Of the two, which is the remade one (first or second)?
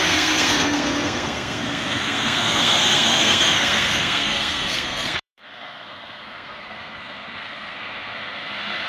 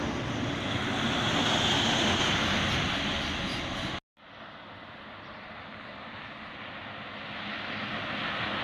first